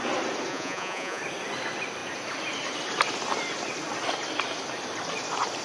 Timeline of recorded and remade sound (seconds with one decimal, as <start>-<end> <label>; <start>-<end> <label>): 0.0-0.5 recorded; 0.5-1.2 remade; 1.2-5.6 recorded